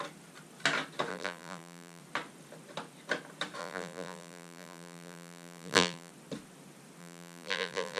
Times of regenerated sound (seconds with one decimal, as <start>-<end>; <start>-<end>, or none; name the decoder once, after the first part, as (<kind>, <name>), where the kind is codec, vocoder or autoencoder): 1.1-2.0 (vocoder, BigVGAN v2); 3.6-6.1; 7.0-8.0